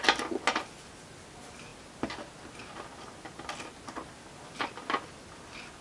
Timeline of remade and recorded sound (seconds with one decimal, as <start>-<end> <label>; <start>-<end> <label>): 0.0-5.8 recorded